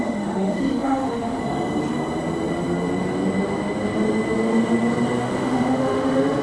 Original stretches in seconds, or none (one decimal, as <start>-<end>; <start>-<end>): 1.4-5.2